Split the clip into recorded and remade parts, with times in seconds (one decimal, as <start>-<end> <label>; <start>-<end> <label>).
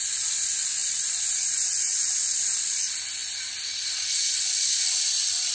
0.0-5.5 recorded